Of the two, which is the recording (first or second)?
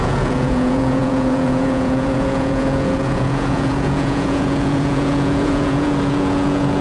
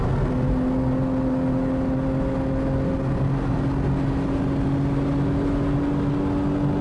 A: second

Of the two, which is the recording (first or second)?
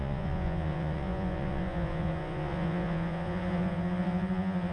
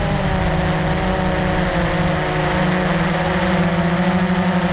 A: second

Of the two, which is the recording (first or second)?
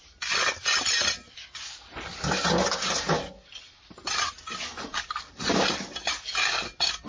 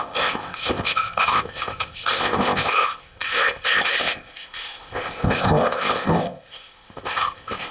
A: first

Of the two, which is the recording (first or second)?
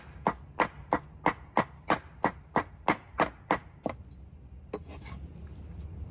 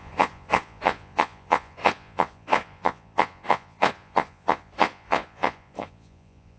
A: first